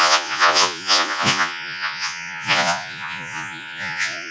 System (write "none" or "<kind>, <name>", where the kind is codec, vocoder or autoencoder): vocoder, Vocos